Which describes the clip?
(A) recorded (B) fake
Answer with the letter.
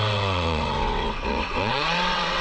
B